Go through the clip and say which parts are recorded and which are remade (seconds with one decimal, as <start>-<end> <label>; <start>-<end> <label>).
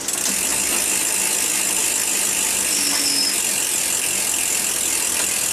0.0-5.5 recorded